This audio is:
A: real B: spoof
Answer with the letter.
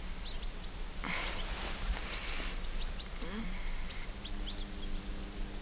A